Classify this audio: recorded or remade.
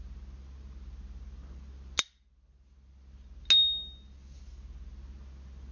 recorded